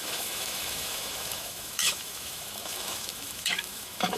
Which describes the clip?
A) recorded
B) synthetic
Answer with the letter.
B